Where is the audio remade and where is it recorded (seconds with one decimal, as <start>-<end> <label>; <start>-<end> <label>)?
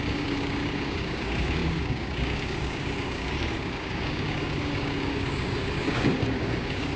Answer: 0.0-7.0 remade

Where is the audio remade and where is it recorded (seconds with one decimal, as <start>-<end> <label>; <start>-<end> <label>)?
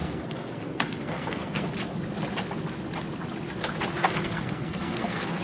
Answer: 0.0-1.7 remade; 1.7-4.0 recorded; 4.0-5.4 remade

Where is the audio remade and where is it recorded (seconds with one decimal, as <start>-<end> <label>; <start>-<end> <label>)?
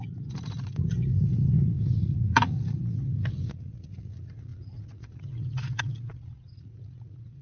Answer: 0.0-7.4 remade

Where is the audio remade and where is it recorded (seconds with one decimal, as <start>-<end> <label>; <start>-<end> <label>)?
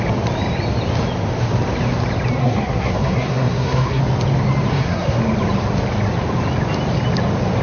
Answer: 0.0-2.4 recorded; 2.4-4.0 remade; 4.0-4.7 recorded; 4.7-5.2 remade; 5.2-7.6 recorded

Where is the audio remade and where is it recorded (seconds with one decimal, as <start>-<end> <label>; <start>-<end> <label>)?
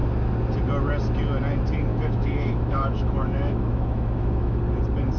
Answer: 0.0-1.9 recorded; 1.9-4.6 remade; 4.6-5.2 recorded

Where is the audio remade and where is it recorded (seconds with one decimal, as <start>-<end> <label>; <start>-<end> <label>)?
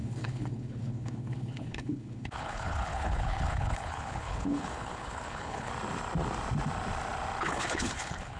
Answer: 0.0-5.7 remade; 5.7-7.4 recorded; 7.4-8.4 remade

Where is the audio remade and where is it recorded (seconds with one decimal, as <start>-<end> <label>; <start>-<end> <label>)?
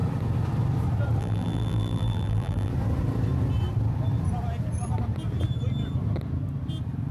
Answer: 0.0-1.2 recorded; 1.2-2.7 remade; 2.7-7.1 recorded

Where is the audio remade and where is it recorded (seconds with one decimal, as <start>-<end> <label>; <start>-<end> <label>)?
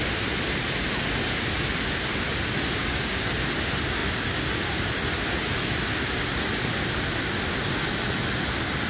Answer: 0.0-2.8 recorded; 2.8-3.3 remade; 3.3-8.9 recorded